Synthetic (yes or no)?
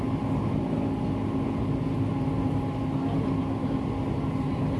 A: no